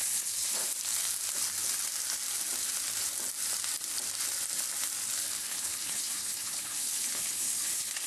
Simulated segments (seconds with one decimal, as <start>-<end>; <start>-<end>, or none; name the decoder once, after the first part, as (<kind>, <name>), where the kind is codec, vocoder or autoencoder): 0.0-0.7 (codec, HILCodec); 5.4-8.1